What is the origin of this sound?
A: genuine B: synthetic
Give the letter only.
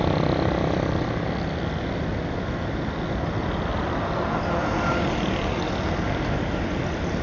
A